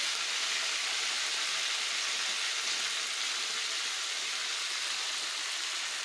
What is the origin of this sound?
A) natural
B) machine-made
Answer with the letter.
A